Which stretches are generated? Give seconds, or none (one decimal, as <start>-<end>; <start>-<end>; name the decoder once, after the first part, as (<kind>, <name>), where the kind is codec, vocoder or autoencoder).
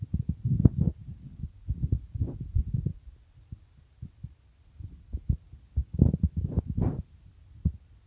none